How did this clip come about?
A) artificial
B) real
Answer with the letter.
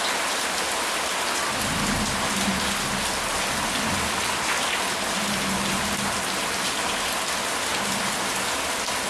B